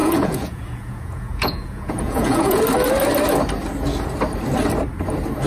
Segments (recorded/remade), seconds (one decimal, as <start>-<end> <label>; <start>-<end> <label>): 0.0-2.6 remade; 2.6-5.5 recorded